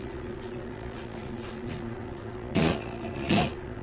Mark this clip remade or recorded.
remade